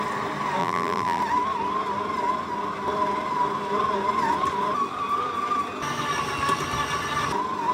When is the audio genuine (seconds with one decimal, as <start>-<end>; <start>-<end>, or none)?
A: 0.0-0.6; 1.2-7.7